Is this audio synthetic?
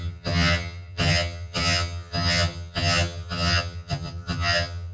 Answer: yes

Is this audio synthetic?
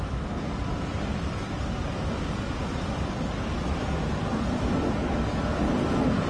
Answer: no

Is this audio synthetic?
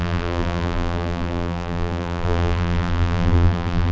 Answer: yes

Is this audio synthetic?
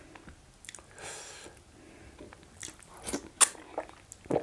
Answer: no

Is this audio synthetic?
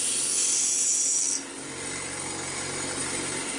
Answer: no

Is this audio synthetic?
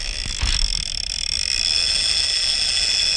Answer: no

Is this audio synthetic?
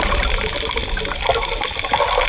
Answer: no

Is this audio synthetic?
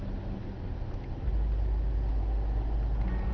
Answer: no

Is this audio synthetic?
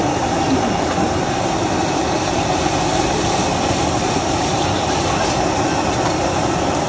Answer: no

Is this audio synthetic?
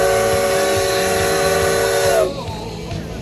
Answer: no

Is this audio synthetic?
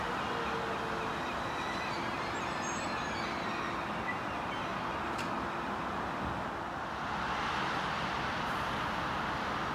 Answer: no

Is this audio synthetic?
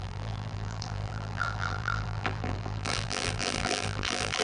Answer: yes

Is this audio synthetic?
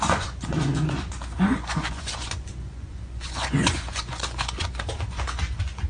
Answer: yes